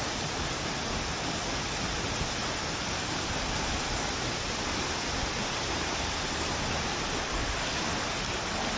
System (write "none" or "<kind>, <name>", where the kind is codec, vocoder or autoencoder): none